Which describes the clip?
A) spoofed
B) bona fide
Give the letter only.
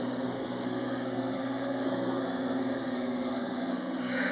A